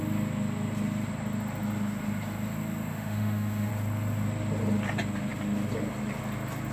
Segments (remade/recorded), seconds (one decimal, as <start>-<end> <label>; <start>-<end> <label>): 0.0-2.9 recorded; 2.9-3.7 remade; 3.7-6.7 recorded